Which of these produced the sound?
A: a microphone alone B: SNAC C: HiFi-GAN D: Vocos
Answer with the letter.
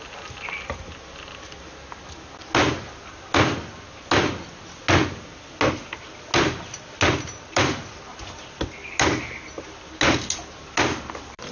A